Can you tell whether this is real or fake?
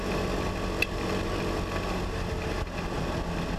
real